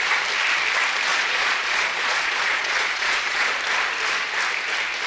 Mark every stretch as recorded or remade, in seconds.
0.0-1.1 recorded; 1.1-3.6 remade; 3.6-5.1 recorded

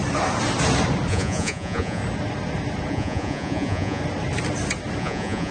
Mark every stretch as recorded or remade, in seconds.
0.0-1.1 recorded; 1.1-2.0 remade; 2.0-2.9 recorded; 2.9-4.0 remade; 4.0-5.0 recorded; 5.0-5.5 remade

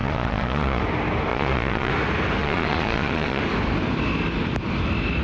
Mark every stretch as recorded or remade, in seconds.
0.0-0.8 remade; 0.8-1.3 recorded; 1.3-1.9 remade; 1.9-2.4 recorded; 2.4-3.4 remade; 3.4-5.2 recorded

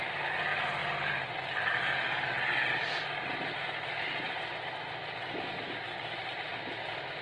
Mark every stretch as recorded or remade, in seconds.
0.0-7.2 recorded